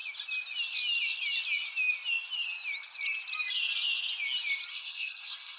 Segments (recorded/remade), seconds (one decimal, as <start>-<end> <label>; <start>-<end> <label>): 0.0-4.7 recorded; 4.7-5.6 remade